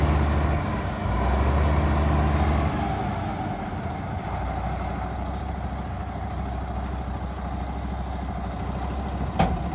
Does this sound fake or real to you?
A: real